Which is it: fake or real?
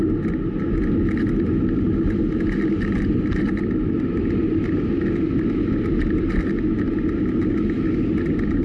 real